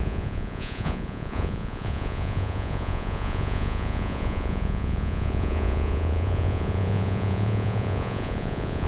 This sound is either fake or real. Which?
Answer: fake